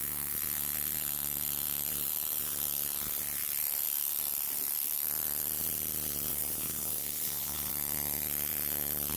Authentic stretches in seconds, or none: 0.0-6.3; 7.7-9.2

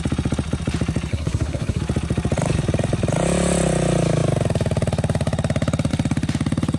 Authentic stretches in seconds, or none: 0.0-1.1; 1.8-6.8

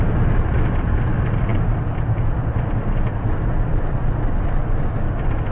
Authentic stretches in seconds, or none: 0.0-5.5

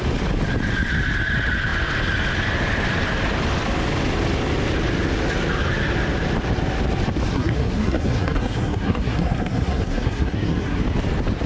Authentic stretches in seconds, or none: 0.0-7.3; 10.8-11.5

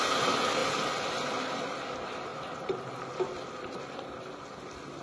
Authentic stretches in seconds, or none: 0.0-5.0

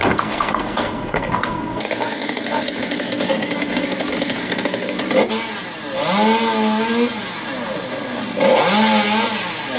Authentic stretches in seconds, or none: 5.0-9.8